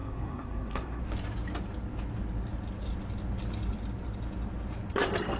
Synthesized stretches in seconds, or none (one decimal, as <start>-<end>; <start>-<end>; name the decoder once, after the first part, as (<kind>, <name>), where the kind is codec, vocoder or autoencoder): 0.0-1.0 (codec, SNAC)